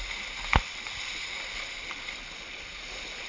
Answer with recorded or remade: recorded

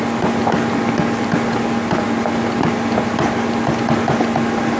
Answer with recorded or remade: recorded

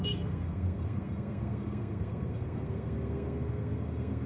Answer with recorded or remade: remade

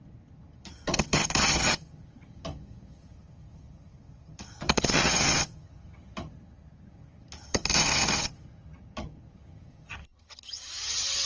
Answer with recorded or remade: remade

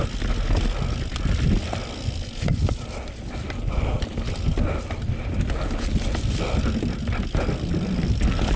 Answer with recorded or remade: recorded